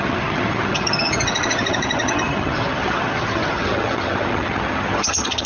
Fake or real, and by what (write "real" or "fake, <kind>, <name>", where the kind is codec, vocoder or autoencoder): fake, vocoder, HiFi-GAN